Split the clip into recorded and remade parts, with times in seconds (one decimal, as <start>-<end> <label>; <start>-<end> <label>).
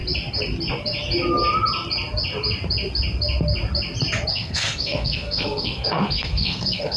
0.0-4.3 recorded; 4.3-7.0 remade